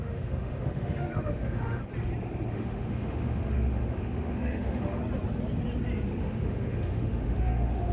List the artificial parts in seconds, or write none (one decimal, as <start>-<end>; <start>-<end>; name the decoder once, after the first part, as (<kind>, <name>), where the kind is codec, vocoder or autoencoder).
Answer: 0.0-1.8 (autoencoder, DAC-VAE); 2.5-5.0; 6.2-7.9